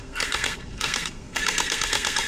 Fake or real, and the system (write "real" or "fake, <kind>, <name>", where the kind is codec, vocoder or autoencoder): fake, codec, SNAC